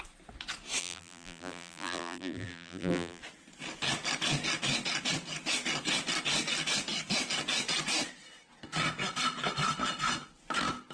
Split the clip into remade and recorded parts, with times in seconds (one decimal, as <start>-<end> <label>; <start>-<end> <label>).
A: 0.0-0.8 recorded; 0.8-3.2 remade; 3.2-10.9 recorded